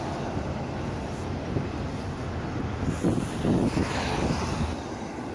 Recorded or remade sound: recorded